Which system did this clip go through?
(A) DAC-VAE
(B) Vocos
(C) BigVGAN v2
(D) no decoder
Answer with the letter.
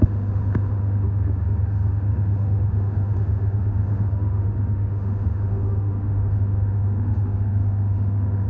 A